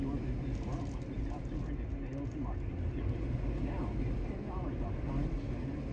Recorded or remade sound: recorded